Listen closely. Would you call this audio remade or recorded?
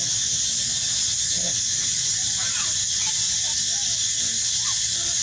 recorded